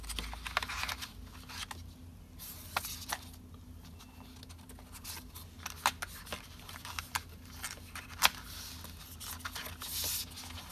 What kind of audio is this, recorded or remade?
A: recorded